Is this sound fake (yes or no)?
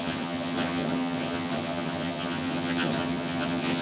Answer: yes